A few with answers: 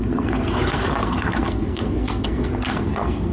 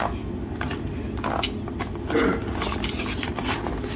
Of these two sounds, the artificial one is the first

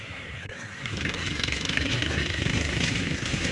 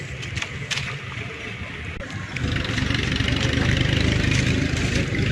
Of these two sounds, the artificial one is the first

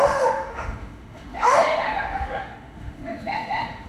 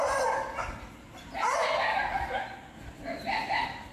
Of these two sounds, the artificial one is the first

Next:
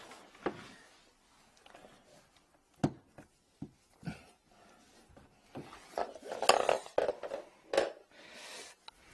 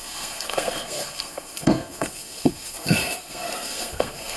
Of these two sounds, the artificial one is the second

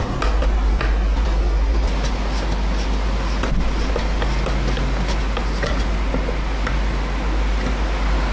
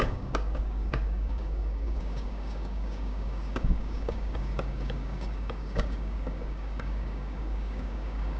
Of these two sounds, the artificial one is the second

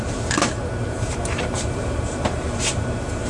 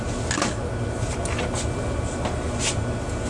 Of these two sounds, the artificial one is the first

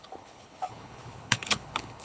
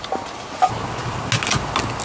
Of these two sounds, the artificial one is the first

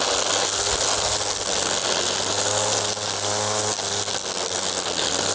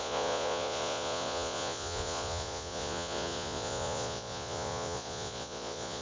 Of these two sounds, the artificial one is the second